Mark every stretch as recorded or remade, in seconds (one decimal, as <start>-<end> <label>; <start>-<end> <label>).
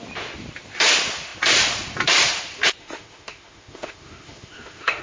0.0-2.8 recorded; 2.8-5.0 remade